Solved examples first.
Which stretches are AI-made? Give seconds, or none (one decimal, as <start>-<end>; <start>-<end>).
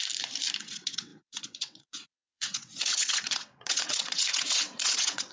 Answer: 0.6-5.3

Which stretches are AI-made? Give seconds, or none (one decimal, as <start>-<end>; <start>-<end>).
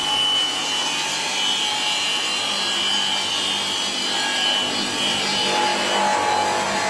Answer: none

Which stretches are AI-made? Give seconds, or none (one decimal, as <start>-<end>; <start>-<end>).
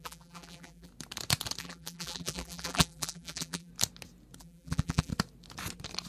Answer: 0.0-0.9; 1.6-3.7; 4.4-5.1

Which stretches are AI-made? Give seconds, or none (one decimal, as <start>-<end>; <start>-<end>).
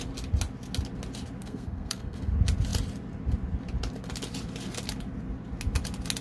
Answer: 1.4-2.3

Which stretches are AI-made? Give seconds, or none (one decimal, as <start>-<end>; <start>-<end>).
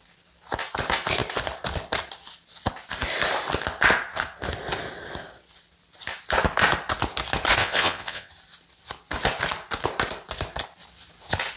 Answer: 7.6-8.3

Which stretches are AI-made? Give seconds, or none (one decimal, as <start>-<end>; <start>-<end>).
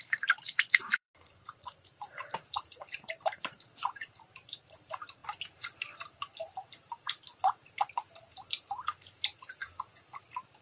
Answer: 0.0-5.2; 7.0-9.6; 10.2-10.6